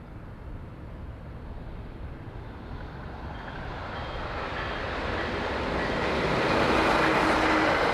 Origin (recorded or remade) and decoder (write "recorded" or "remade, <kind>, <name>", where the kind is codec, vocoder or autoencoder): recorded